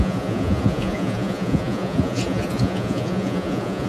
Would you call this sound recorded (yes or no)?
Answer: no